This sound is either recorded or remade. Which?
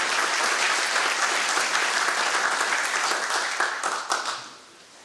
recorded